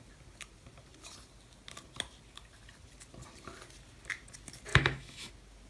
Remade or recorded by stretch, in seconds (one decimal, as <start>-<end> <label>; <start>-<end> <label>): 0.0-4.7 recorded; 4.7-5.3 remade; 5.3-5.7 recorded